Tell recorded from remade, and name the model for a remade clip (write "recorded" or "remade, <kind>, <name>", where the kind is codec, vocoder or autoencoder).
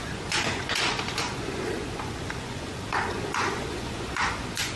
remade, vocoder, Vocos